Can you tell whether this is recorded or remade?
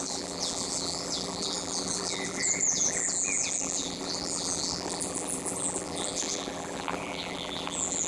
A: remade